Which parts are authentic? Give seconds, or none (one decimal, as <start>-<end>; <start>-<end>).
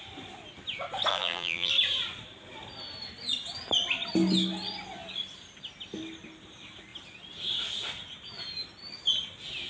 0.0-1.1; 1.7-9.7